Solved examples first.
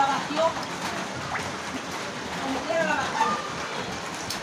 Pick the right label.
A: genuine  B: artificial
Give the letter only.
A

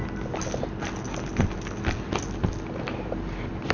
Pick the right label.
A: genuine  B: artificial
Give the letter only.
A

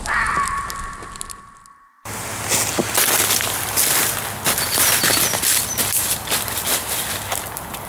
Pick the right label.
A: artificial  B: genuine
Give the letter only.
B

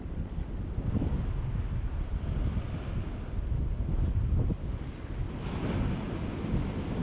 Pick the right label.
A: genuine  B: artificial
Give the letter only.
A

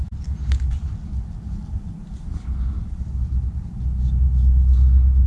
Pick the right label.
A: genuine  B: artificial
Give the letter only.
A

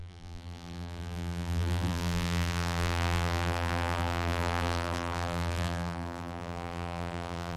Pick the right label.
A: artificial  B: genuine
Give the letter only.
A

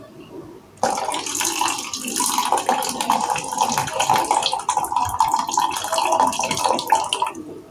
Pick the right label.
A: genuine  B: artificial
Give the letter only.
A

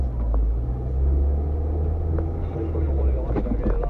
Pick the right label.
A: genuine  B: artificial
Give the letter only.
A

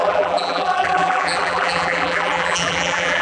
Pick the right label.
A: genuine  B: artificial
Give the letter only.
B